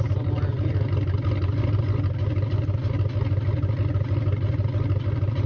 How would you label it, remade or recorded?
recorded